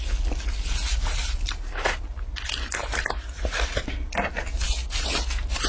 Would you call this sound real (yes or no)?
yes